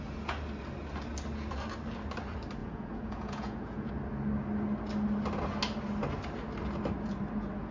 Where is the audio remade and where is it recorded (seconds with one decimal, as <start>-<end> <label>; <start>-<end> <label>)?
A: 0.0-2.6 recorded; 2.6-3.9 remade; 3.9-7.7 recorded